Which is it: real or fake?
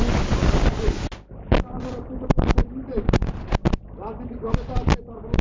real